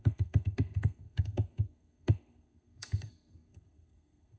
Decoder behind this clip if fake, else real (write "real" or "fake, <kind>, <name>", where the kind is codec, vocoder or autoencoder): fake, codec, SNAC